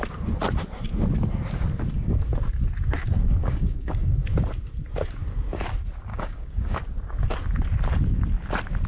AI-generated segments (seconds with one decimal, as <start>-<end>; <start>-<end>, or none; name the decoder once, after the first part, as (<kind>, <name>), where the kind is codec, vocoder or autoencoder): 3.4-4.1 (codec, DAC); 6.1-6.8